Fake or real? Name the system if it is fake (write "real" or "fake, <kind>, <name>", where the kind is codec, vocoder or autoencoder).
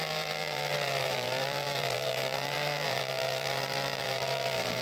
fake, vocoder, BigVGAN v2